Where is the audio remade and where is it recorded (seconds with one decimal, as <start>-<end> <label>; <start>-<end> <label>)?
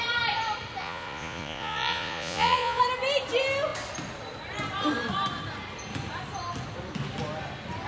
0.0-0.8 recorded; 0.8-2.8 remade; 2.8-7.9 recorded